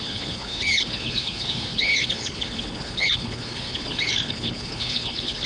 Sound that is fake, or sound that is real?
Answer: fake